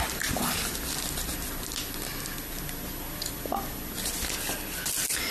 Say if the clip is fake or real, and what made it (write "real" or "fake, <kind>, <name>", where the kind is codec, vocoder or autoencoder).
real